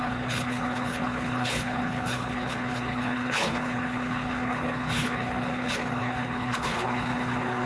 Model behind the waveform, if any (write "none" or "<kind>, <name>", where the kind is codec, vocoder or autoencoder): codec, HILCodec